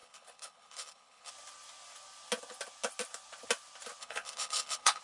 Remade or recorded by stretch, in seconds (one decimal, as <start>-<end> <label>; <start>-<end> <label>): 0.0-1.3 remade; 1.3-4.0 recorded; 4.0-5.0 remade